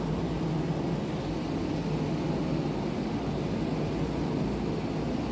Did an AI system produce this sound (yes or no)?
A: no